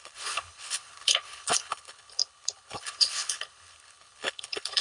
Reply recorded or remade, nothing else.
remade